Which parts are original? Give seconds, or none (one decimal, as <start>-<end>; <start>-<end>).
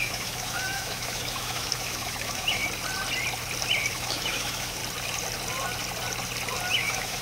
2.6-3.9; 4.8-6.7